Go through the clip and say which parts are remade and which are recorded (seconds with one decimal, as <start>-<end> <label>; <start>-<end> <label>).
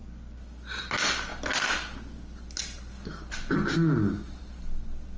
0.0-5.2 recorded